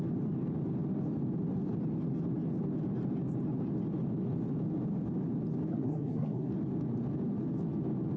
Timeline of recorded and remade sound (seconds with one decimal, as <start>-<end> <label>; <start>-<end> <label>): 0.0-5.7 recorded; 5.7-6.5 remade; 6.5-8.2 recorded